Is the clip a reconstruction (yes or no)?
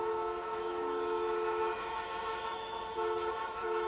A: yes